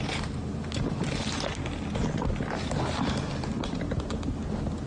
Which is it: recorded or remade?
recorded